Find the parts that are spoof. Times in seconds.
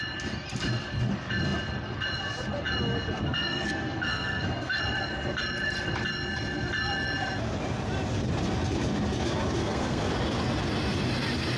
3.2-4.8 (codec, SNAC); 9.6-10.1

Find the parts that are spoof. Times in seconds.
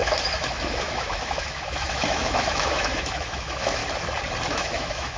0.0-3.8 (autoencoder, DAC-VAE); 4.5-5.2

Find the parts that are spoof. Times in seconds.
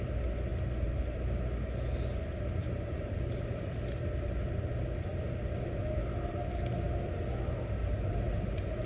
0.5-1.2 (vocoder, BigVGAN v2); 2.6-3.7; 7.8-8.9